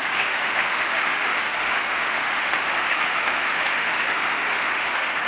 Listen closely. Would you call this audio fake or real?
fake